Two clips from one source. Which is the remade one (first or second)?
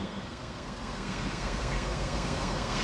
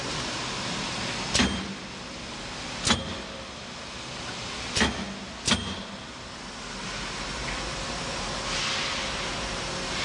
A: first